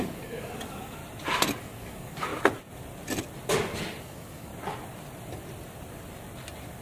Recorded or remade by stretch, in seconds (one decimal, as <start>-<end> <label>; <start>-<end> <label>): 0.0-1.0 remade; 1.0-1.6 recorded; 1.6-2.3 remade; 2.3-4.0 recorded; 4.0-4.5 remade; 4.5-6.8 recorded